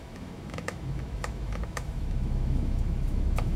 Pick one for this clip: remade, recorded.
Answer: remade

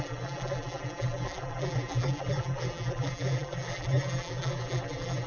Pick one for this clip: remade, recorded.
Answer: remade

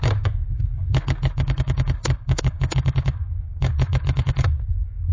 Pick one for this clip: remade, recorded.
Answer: remade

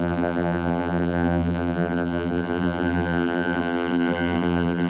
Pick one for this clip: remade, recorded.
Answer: remade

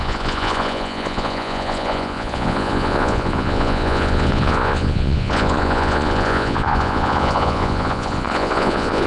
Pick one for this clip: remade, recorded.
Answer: remade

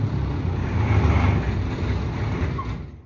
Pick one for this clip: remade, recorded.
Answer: recorded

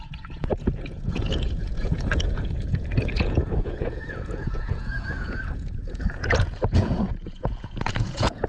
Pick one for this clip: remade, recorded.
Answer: remade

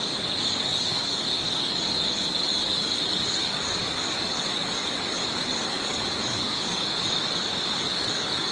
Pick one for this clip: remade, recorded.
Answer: remade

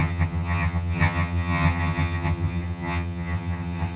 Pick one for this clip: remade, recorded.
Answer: remade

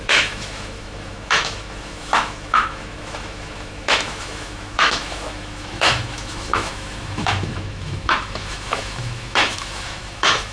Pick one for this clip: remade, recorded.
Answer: remade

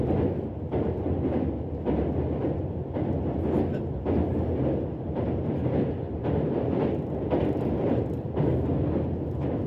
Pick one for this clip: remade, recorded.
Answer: recorded